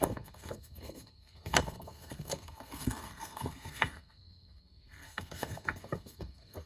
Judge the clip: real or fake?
fake